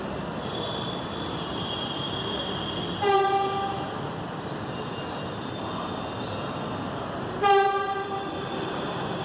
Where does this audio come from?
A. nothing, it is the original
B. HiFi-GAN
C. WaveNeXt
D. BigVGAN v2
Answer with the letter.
A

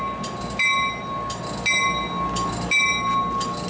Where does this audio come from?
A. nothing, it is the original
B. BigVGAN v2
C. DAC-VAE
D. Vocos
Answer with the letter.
A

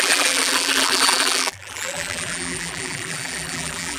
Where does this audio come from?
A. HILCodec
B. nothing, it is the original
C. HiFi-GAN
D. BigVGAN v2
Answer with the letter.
D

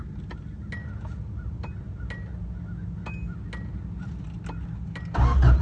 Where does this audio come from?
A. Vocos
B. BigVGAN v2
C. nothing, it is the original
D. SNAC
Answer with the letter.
C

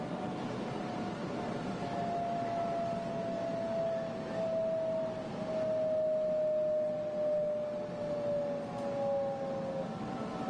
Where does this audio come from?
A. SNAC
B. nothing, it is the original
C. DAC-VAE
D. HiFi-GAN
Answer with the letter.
B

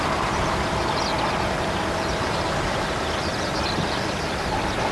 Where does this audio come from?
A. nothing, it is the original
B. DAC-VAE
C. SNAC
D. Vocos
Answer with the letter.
A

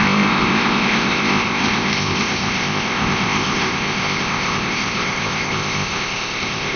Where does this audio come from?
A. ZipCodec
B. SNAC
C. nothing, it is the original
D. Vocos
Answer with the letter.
A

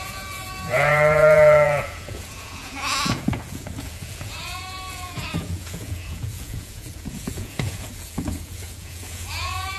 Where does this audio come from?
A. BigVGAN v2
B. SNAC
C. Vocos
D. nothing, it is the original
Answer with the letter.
C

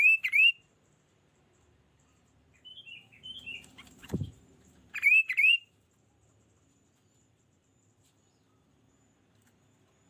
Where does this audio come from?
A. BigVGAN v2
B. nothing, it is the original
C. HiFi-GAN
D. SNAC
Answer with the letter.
A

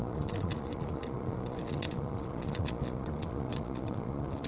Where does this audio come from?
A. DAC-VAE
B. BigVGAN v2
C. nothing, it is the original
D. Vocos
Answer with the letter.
D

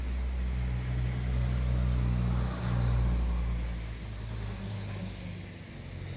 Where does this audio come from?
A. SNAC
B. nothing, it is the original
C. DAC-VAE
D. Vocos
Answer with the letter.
B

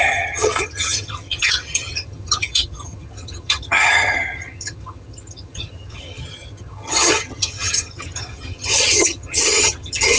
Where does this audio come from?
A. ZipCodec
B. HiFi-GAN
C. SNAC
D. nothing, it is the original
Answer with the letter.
B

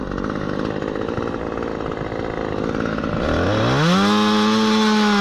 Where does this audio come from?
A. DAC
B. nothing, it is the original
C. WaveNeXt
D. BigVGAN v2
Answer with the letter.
B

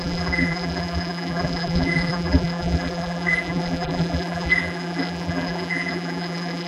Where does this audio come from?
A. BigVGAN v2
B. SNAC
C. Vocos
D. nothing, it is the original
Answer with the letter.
A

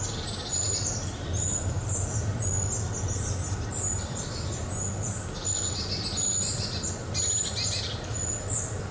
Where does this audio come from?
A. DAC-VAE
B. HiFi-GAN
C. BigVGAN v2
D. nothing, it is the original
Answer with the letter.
D